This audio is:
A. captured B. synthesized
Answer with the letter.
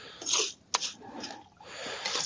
A